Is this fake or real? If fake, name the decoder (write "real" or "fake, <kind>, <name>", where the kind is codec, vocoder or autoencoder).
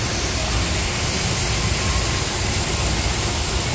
real